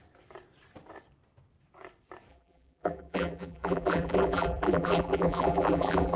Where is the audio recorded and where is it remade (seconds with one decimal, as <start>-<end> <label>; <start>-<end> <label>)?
0.0-2.3 recorded; 2.3-6.2 remade